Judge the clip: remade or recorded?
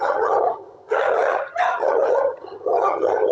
remade